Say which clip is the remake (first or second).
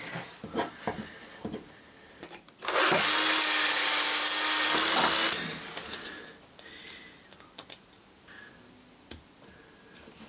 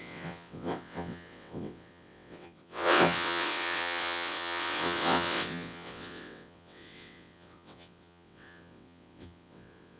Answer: second